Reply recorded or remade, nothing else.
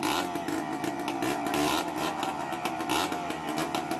recorded